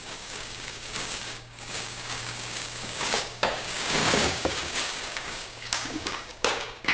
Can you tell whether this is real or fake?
fake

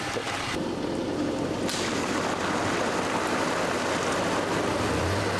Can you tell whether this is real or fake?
real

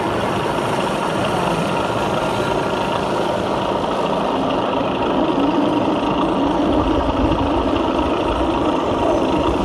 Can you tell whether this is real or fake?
real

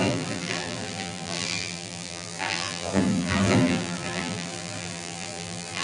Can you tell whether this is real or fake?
fake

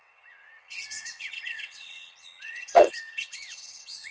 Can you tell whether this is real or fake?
fake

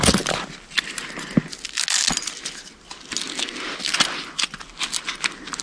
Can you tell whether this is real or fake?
real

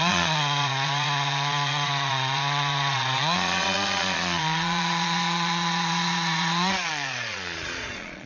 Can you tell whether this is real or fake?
fake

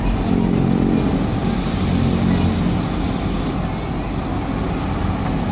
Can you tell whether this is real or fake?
real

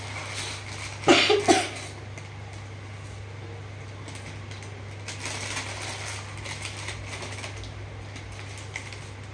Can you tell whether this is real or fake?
real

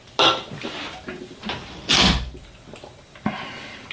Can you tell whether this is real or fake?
real